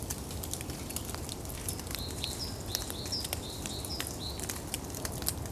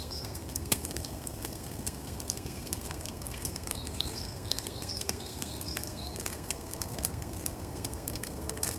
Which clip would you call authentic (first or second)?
first